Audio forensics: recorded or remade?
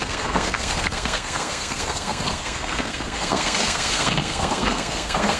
remade